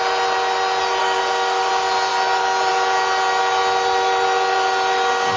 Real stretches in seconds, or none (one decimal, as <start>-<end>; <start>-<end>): 0.0-1.0; 1.7-5.4